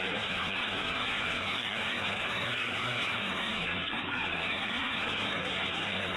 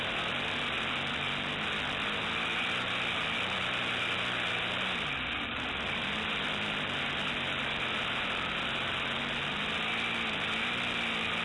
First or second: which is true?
second